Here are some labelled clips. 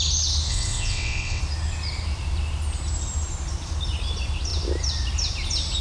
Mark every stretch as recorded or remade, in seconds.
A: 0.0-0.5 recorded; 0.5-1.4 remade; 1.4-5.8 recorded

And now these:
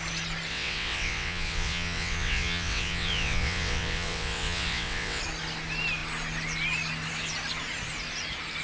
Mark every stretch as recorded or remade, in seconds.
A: 0.0-0.5 recorded; 0.5-5.2 remade; 5.2-8.6 recorded

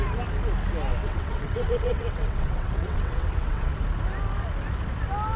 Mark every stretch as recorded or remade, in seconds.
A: 0.0-0.9 recorded; 0.9-3.7 remade; 3.7-5.4 recorded

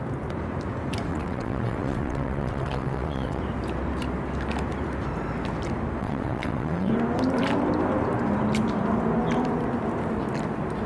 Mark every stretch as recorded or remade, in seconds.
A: 0.0-1.1 recorded; 1.1-3.4 remade; 3.4-6.0 recorded; 6.0-6.9 remade; 6.9-10.9 recorded